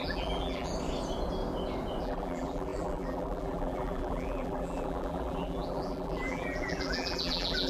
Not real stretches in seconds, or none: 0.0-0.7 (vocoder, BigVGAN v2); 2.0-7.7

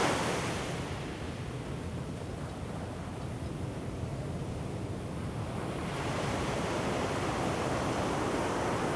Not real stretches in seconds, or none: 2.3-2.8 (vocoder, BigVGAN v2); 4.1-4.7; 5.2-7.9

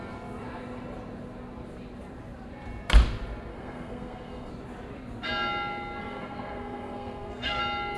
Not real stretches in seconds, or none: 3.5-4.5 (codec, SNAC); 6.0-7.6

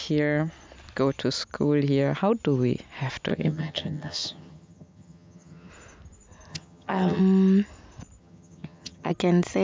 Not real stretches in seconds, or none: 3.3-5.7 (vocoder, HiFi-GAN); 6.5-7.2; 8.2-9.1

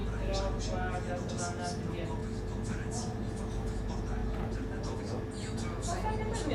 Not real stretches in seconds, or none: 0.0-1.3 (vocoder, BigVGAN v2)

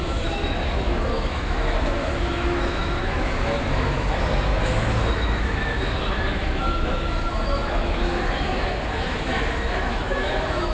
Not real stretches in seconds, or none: 0.0-10.7 (autoencoder, DAC-VAE)

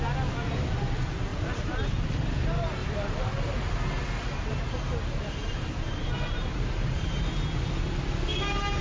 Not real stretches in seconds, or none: 1.3-1.9 (vocoder, BigVGAN v2); 2.8-7.3

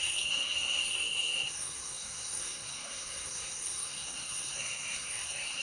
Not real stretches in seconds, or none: 0.0-5.6 (codec, SNAC)